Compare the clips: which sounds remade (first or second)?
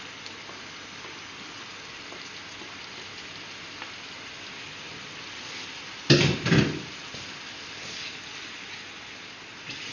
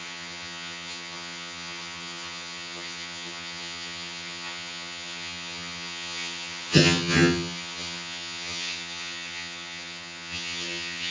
second